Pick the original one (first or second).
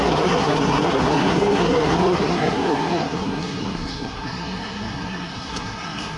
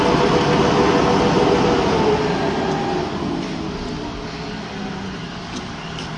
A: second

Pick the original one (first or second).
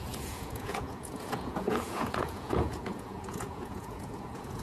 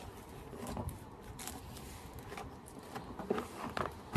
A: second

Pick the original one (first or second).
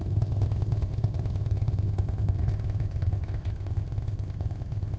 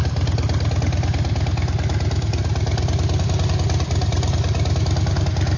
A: second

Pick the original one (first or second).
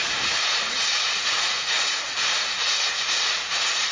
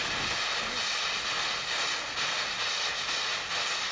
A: second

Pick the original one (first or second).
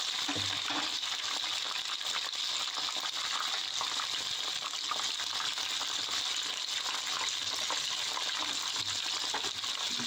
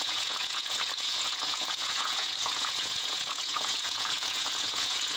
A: first